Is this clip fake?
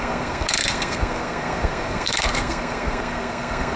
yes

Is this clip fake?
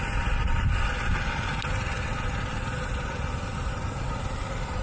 no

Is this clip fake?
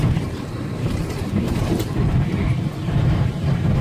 yes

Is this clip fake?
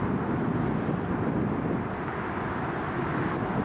no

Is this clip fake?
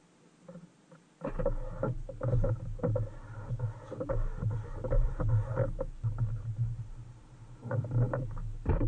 no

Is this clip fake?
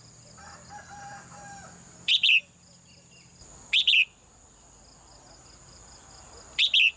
no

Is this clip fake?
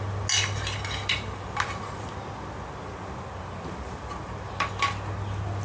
no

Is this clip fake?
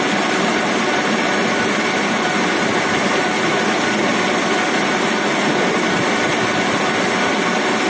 no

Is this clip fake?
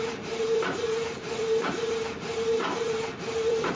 yes